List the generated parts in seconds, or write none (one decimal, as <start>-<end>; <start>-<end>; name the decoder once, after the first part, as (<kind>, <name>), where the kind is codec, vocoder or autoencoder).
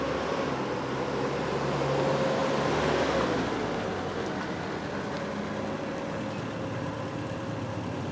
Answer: none